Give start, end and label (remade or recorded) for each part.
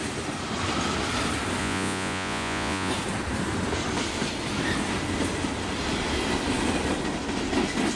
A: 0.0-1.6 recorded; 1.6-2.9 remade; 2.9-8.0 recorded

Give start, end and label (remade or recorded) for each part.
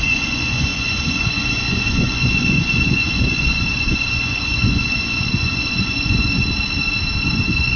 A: 0.0-6.4 remade; 6.4-7.3 recorded; 7.3-7.8 remade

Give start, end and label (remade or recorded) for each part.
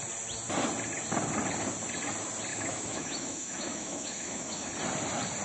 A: 0.0-2.5 recorded; 2.5-4.7 remade; 4.7-5.4 recorded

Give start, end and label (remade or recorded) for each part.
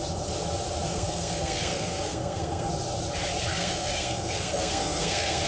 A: 0.0-0.9 recorded; 0.9-2.7 remade; 2.7-3.5 recorded; 3.5-5.5 remade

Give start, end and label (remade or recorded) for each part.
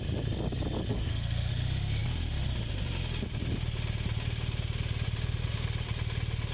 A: 0.0-0.9 recorded; 0.9-1.5 remade; 1.5-6.5 recorded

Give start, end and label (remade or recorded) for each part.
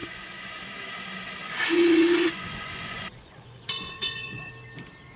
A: 0.0-0.6 remade; 0.6-1.4 recorded; 1.4-4.5 remade; 4.5-5.2 recorded